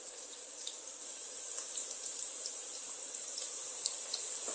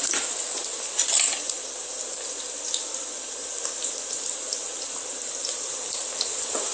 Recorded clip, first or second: second